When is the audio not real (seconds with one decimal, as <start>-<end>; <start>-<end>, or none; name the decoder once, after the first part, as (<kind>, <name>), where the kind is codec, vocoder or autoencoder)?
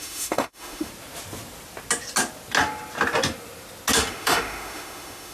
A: 0.0-0.9 (autoencoder, DAC-VAE); 4.1-5.3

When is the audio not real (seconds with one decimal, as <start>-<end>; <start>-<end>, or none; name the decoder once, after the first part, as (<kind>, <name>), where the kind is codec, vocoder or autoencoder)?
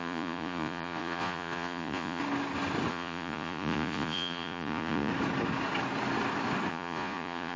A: 0.0-2.2 (vocoder, Vocos); 2.9-5.1; 6.7-7.6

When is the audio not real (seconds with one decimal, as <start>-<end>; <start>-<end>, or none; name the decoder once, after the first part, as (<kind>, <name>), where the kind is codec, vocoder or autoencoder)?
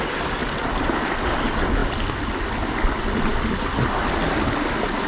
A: none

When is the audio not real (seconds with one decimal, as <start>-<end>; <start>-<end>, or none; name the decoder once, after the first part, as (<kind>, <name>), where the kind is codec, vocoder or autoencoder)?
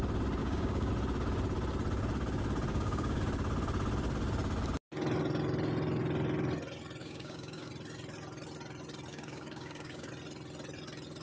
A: 0.4-0.9 (codec, DAC); 2.7-3.2; 7.0-7.7; 9.1-10.1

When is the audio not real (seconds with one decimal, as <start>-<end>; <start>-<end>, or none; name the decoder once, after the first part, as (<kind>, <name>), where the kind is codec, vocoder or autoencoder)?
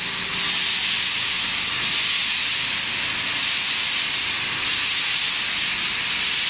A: none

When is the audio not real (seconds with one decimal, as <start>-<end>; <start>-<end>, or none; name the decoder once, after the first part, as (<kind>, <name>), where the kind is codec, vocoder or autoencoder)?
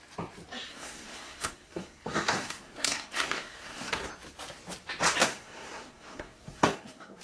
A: 0.7-4.1 (codec, SNAC); 5.2-7.2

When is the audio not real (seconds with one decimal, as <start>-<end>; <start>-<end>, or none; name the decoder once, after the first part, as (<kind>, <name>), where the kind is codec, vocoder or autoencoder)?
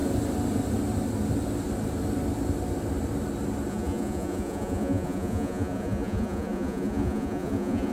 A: 3.7-7.9 (vocoder, Vocos)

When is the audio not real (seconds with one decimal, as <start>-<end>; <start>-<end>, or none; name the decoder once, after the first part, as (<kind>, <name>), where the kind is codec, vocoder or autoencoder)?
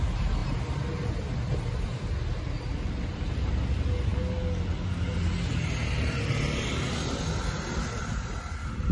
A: none